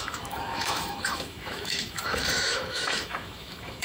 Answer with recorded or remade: remade